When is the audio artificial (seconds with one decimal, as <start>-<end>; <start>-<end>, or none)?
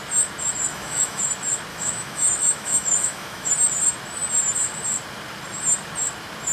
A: 0.7-1.2; 1.7-3.5